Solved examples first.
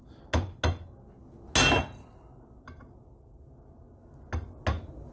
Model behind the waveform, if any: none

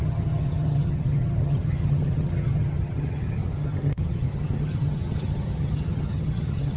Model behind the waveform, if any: vocoder, HiFi-GAN